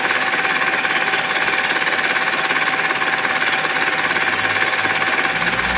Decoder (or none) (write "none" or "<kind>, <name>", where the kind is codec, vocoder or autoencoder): none